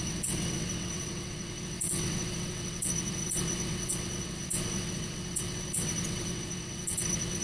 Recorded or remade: remade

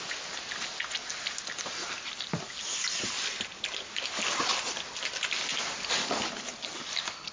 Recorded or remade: recorded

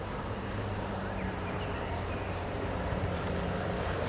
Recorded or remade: remade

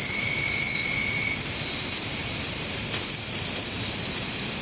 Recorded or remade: remade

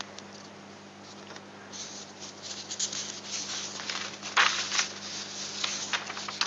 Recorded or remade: recorded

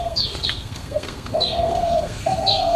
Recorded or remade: remade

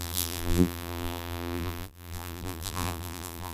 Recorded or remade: remade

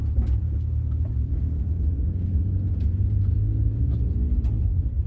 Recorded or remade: remade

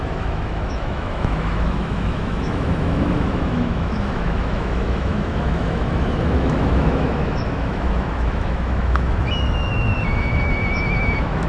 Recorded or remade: remade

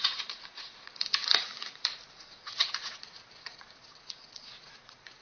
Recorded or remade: remade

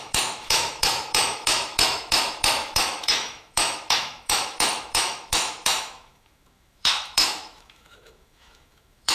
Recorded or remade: remade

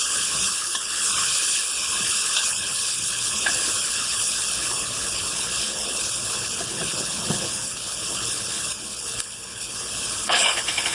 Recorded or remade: remade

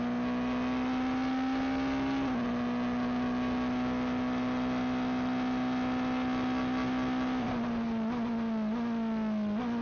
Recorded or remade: recorded